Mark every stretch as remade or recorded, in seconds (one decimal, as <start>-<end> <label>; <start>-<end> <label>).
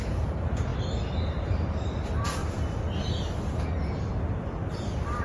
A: 0.0-2.4 remade; 2.4-5.2 recorded